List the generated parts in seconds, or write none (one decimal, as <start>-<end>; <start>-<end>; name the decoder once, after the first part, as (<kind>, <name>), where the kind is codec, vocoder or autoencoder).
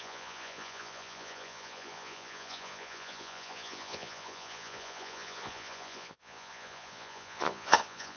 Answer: 0.0-8.2 (vocoder, Vocos)